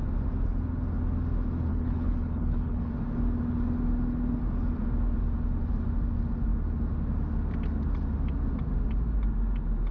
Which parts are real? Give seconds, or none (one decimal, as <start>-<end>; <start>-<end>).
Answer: 0.0-1.7; 2.9-9.9